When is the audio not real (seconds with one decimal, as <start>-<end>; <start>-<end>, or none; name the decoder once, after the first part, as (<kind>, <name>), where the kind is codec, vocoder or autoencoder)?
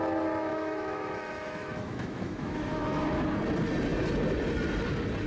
0.5-3.2 (autoencoder, DAC-VAE)